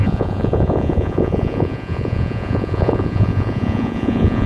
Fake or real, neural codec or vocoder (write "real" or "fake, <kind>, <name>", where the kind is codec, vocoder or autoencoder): fake, vocoder, Vocos